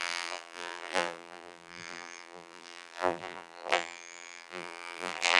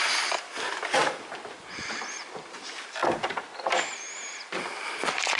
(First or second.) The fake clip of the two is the first